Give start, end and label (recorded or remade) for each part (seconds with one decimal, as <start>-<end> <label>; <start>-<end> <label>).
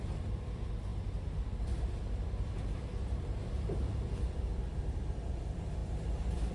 0.0-5.8 remade; 5.8-6.5 recorded